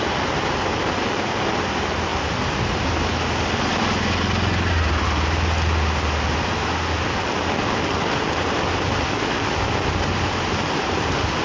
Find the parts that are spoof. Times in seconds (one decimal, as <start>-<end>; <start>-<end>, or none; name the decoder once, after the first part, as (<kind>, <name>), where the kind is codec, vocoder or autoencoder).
none